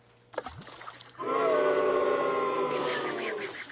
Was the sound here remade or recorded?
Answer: recorded